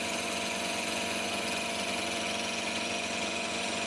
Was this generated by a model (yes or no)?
yes